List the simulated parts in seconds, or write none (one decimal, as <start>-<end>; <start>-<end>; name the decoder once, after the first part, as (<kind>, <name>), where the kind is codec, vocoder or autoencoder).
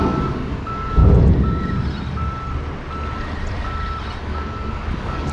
0.0-1.0 (codec, DAC); 4.2-5.3